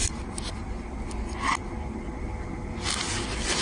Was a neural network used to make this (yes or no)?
no